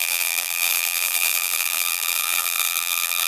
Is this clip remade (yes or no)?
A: yes